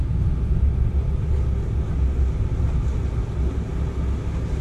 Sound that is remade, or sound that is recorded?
recorded